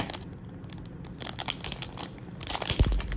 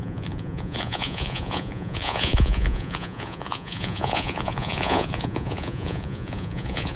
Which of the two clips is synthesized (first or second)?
second